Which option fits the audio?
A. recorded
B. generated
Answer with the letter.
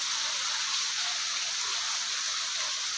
A